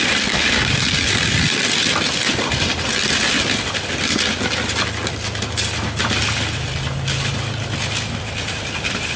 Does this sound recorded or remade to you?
recorded